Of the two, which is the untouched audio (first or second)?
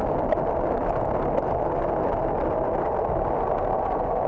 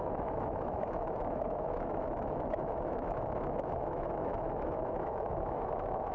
first